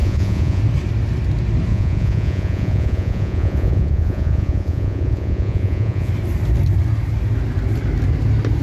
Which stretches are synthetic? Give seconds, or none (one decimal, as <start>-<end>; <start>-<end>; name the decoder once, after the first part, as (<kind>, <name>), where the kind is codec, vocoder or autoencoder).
0.0-0.6 (vocoder, Vocos); 1.7-6.1